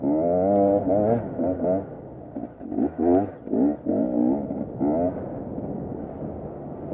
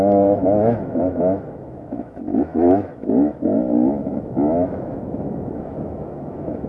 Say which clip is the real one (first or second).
first